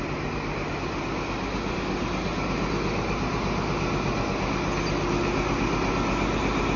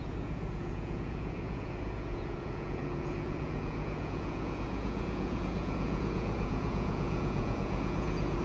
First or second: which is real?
first